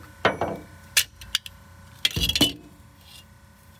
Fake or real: real